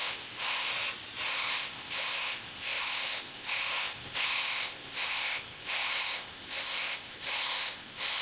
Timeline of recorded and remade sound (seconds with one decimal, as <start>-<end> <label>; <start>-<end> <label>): 0.0-0.7 remade; 0.7-1.3 recorded; 1.3-8.2 remade